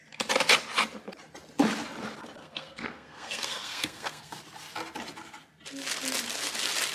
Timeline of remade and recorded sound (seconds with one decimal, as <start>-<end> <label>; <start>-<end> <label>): 0.0-2.4 recorded; 2.4-4.4 remade; 4.4-6.9 recorded